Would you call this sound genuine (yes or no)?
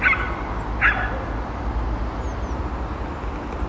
yes